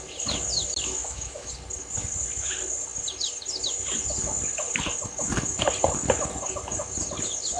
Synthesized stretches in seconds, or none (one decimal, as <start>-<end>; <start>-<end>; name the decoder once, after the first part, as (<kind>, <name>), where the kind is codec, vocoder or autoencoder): 1.0-1.5 (autoencoder, DAC-VAE)

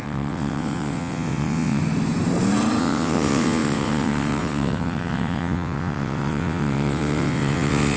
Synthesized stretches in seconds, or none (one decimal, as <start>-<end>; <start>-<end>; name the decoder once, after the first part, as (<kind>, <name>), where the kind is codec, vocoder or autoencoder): 0.0-1.8 (vocoder, WaveNeXt); 2.8-8.0

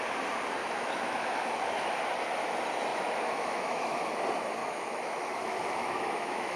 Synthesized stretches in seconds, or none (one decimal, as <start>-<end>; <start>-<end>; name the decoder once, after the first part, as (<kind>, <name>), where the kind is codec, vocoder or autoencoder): 0.6-1.9 (autoencoder, DAC-VAE); 2.9-4.1; 4.6-6.6